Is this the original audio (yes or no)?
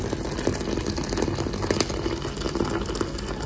yes